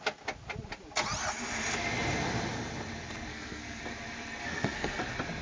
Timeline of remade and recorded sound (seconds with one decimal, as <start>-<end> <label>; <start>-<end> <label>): 0.0-3.3 recorded; 3.3-3.8 remade; 3.8-4.4 recorded; 4.4-5.0 remade; 5.0-5.4 recorded